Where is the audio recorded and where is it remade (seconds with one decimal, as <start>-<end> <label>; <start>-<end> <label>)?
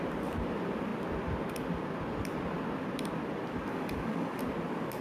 0.0-3.7 recorded; 3.7-4.4 remade; 4.4-5.0 recorded